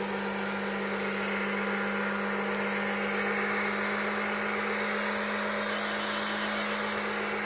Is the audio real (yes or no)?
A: yes